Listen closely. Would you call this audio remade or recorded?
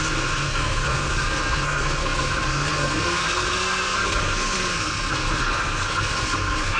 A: remade